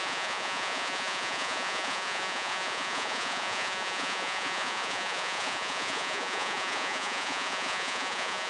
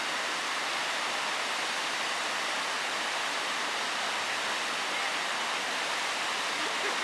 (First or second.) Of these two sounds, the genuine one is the second